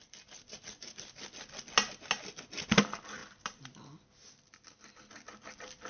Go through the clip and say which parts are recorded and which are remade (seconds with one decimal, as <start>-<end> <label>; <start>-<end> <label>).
0.0-5.9 recorded